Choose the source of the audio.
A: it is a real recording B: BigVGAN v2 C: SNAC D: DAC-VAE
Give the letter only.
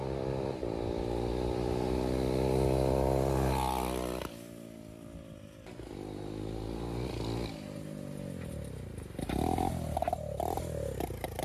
A